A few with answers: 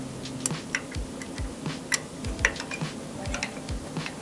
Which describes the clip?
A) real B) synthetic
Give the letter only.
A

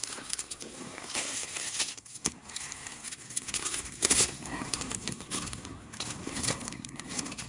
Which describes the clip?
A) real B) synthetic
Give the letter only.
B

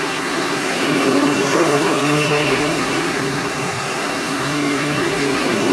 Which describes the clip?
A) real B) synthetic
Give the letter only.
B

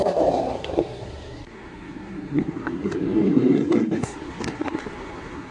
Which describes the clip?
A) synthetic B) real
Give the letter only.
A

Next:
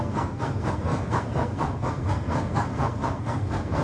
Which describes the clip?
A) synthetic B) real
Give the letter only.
A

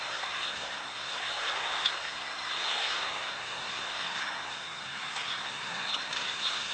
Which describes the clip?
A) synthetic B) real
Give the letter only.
A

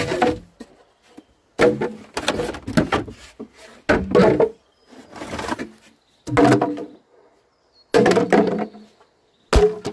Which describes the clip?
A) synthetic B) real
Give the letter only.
B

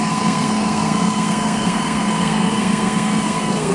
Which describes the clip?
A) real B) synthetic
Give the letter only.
B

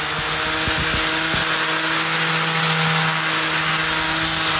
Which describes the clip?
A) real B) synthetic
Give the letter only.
A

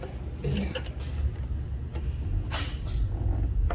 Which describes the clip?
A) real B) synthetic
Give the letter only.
A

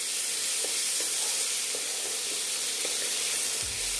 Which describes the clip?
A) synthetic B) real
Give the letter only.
B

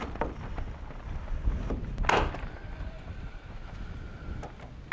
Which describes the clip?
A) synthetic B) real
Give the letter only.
B